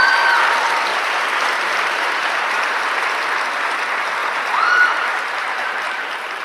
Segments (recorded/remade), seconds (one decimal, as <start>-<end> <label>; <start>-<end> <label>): 0.0-0.9 recorded; 0.9-3.0 remade; 3.0-4.2 recorded; 4.2-5.7 remade; 5.7-6.4 recorded